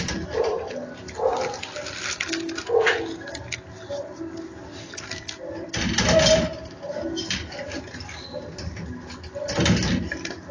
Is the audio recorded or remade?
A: recorded